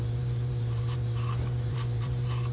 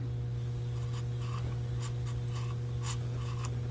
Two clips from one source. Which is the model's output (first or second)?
first